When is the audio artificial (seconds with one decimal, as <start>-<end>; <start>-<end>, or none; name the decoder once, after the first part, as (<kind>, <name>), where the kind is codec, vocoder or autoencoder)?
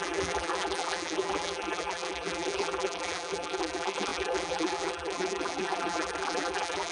0.0-6.9 (vocoder, BigVGAN v2)